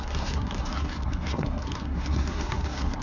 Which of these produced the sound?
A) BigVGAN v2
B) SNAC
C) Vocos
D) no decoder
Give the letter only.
B